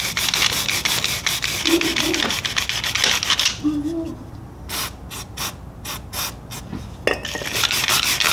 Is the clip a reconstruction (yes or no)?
no